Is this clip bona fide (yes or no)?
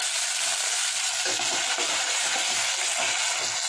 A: yes